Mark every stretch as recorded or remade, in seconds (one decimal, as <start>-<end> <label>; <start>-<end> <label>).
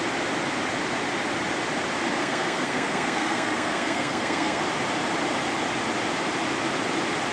0.0-2.2 recorded; 2.2-4.6 remade; 4.6-7.3 recorded